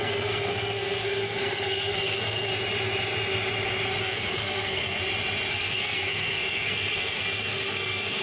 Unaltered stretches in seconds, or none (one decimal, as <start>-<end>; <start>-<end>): 2.5-4.0; 5.0-5.5